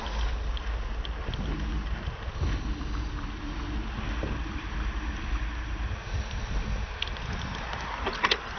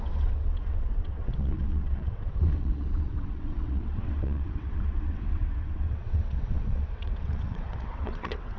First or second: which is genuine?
first